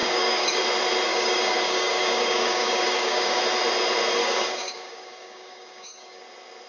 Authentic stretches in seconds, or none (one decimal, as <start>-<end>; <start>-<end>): 0.6-1.1; 3.4-4.2; 6.2-6.7